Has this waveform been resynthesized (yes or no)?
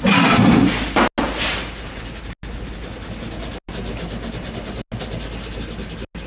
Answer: no